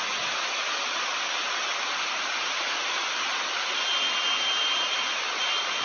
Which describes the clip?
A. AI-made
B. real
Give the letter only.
B